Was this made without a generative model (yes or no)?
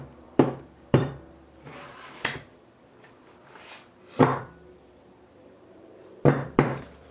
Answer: no